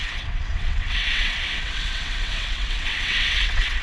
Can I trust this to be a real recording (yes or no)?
no